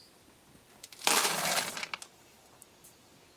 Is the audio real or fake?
real